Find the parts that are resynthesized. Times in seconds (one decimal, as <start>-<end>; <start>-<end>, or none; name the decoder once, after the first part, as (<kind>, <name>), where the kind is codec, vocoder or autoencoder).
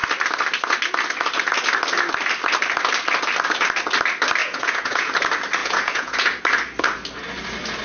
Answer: 4.4-5.1 (vocoder, Vocos); 5.6-6.4